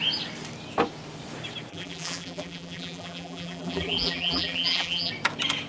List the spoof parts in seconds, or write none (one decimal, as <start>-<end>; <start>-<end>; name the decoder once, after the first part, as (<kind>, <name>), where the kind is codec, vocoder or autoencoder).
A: 1.7-5.1 (vocoder, BigVGAN v2)